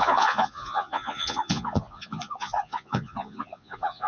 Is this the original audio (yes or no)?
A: no